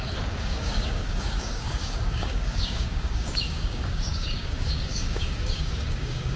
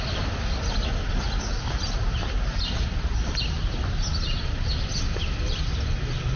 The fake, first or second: first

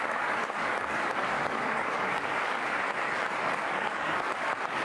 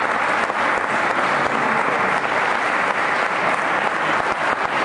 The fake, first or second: first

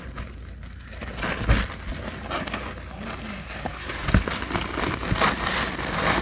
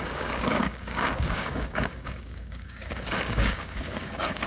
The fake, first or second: second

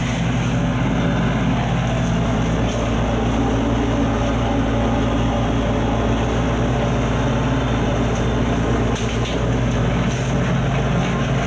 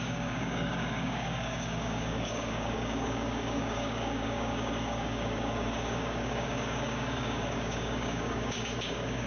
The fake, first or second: second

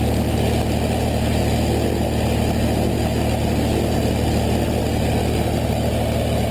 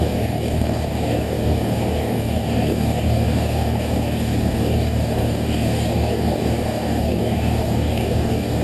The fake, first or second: second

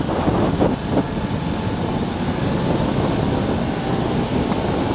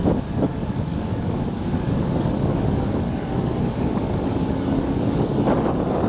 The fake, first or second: second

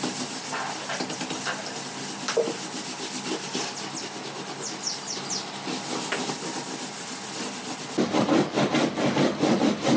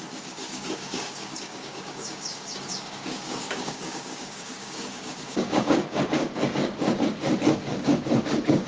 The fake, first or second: second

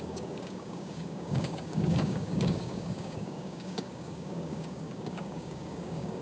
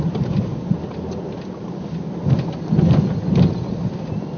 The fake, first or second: first